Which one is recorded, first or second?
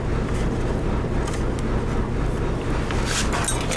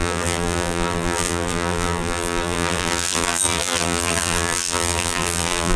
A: first